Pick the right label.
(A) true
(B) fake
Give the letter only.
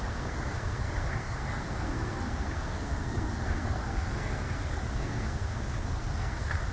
B